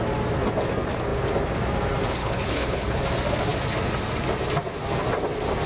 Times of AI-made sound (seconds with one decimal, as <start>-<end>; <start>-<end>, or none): 2.2-3.0